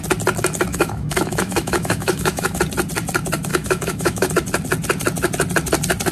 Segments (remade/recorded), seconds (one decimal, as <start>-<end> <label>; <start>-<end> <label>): 0.0-0.7 recorded; 0.7-2.6 remade; 2.6-3.5 recorded; 3.5-4.3 remade; 4.3-6.1 recorded